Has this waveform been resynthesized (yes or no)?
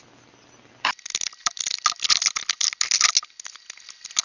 no